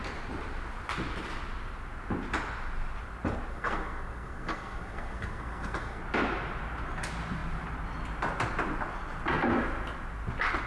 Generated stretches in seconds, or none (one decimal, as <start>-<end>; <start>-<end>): 3.5-6.0